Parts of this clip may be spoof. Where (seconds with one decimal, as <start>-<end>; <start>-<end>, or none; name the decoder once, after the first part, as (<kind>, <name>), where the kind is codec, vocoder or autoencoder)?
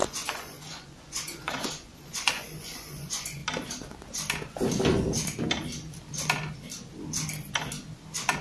0.0-3.4 (vocoder, Vocos)